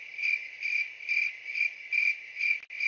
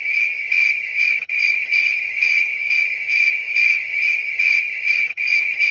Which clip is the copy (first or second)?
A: second